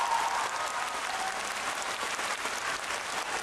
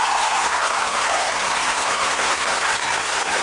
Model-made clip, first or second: second